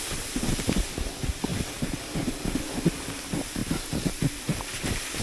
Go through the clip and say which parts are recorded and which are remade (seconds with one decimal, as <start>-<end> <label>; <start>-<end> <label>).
0.0-5.2 recorded